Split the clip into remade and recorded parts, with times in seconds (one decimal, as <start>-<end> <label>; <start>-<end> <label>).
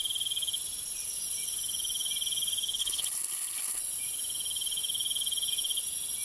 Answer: 0.0-2.8 recorded; 2.8-3.8 remade; 3.8-6.2 recorded